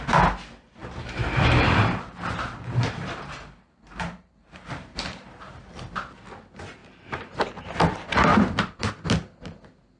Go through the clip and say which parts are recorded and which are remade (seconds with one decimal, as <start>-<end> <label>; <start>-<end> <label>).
0.0-0.8 recorded; 0.8-5.6 remade; 5.6-6.8 recorded; 6.8-7.6 remade; 7.6-8.3 recorded; 8.3-8.9 remade; 8.9-10.0 recorded